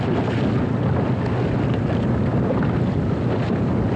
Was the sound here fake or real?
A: real